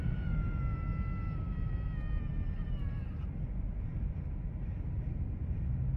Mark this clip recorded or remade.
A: recorded